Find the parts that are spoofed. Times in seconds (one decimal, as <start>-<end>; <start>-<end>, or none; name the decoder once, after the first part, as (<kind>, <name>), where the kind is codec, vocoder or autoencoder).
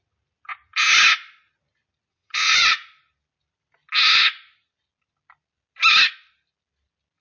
2.1-2.8 (vocoder, WaveNeXt)